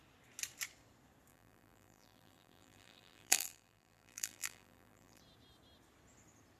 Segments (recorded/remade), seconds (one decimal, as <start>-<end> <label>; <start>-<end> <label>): 0.0-1.3 recorded; 1.3-5.2 remade; 5.2-6.6 recorded